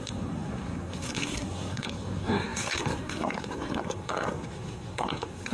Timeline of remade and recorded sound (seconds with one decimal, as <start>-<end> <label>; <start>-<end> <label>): 0.0-5.5 remade